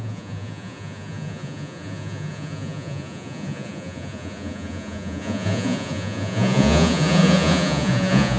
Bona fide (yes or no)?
no